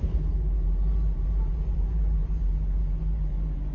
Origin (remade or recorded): remade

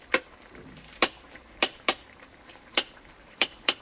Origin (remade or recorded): remade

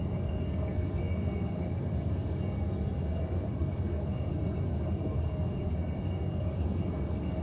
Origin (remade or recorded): remade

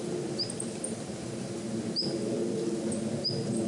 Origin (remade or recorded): recorded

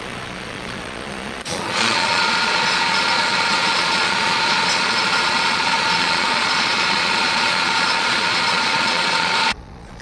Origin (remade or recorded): remade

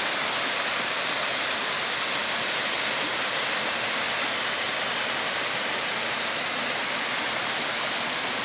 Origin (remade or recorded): recorded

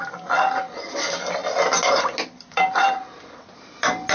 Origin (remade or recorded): recorded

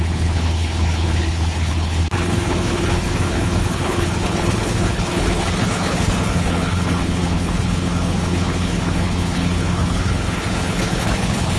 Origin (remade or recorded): remade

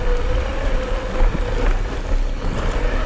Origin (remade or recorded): recorded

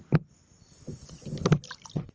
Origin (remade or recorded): recorded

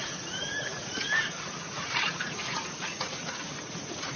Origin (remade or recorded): remade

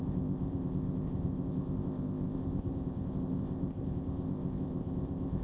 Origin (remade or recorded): remade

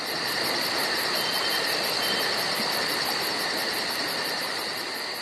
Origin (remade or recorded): recorded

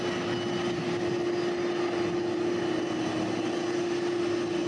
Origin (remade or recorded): recorded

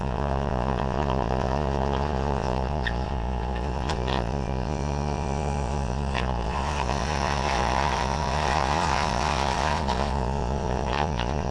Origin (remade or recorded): remade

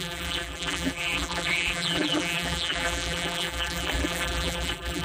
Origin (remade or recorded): remade